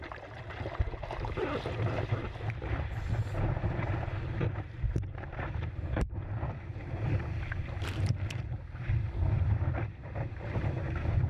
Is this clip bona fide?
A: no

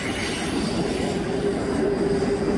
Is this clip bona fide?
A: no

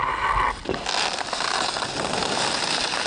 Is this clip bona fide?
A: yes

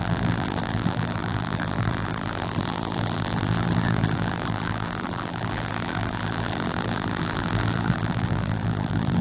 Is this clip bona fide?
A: no